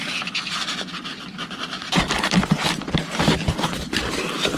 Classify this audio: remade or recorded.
recorded